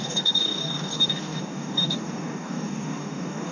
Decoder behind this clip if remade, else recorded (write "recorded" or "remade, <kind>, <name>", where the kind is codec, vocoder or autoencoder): remade, codec, DAC